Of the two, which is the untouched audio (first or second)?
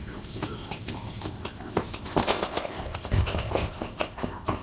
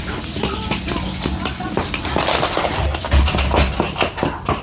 second